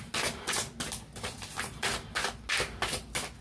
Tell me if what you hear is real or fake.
real